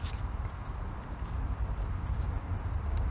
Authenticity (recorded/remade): recorded